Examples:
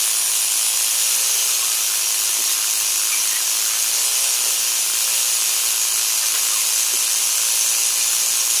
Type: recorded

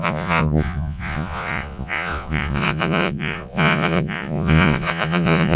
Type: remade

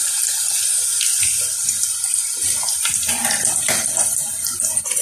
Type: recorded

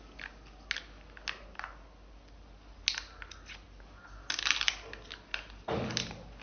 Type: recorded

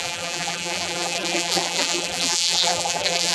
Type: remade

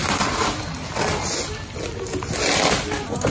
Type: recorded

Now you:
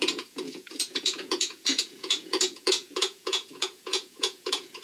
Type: remade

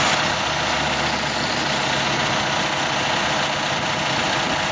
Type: recorded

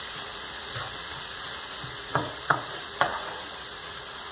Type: remade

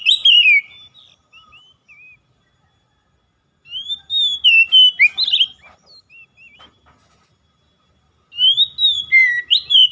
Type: recorded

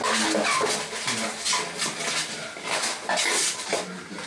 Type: recorded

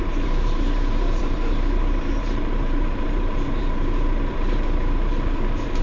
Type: remade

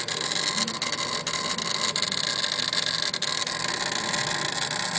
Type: recorded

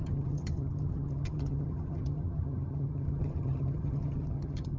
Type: remade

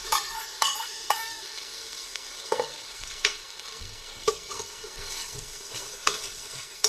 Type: remade